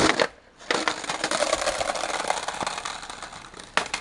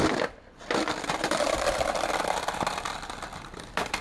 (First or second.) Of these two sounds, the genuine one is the first